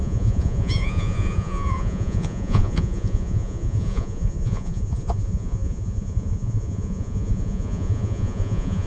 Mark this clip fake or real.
fake